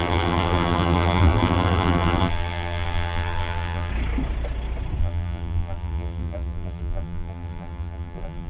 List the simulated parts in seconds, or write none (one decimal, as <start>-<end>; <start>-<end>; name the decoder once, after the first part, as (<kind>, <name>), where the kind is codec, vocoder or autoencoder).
0.0-3.9 (vocoder, BigVGAN v2); 5.0-8.5